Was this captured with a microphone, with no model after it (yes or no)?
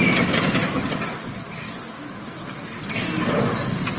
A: yes